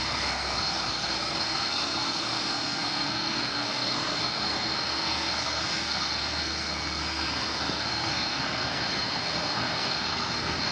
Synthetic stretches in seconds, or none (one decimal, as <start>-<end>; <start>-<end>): 0.0-10.7